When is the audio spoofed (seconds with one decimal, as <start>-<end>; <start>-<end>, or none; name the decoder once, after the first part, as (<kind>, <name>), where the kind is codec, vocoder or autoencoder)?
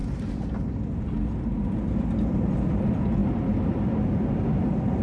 none